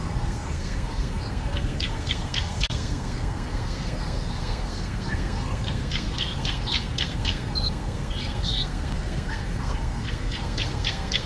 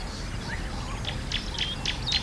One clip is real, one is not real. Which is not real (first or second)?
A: first